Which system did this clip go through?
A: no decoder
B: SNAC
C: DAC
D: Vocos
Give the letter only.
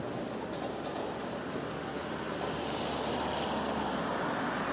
A